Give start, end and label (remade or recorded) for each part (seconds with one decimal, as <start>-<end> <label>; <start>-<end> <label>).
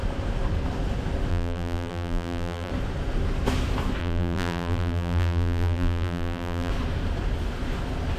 0.0-1.3 recorded; 1.3-2.7 remade; 2.7-4.0 recorded; 4.0-6.7 remade; 6.7-8.2 recorded